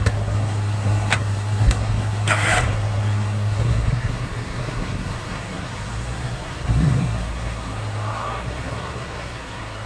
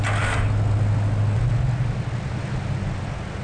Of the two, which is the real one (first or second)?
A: second